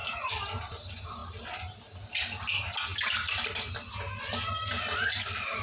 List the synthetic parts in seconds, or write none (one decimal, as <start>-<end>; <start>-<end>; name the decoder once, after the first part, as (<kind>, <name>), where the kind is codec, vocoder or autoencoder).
none